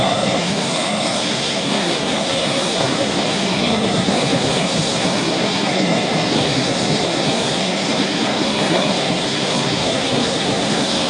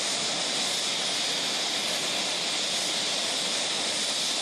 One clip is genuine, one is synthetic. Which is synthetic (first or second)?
first